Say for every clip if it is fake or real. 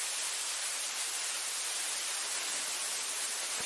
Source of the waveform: real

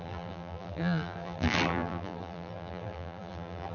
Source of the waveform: fake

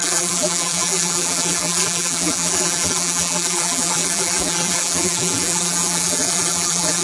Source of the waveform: fake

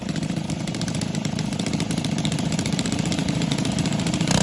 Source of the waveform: fake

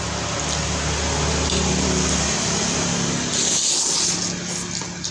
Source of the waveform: real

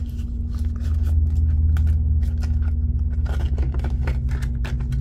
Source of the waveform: real